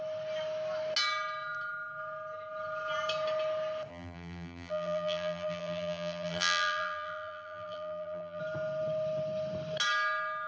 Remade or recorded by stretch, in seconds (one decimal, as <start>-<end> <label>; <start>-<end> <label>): 0.0-3.9 recorded; 3.9-8.4 remade; 8.4-10.5 recorded